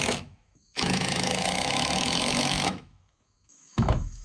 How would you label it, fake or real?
fake